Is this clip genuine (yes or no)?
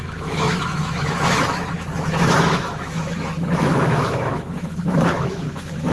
no